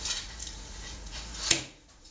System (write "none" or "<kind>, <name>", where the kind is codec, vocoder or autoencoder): vocoder, Vocos